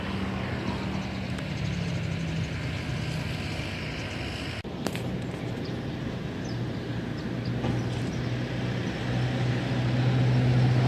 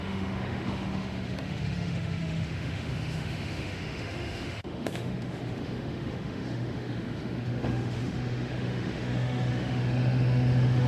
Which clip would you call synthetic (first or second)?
second